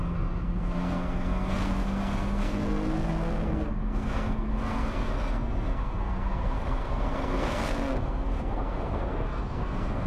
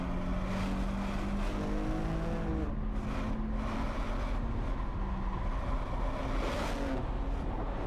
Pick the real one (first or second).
second